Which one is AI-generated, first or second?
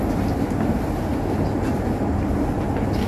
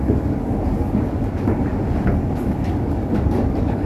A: second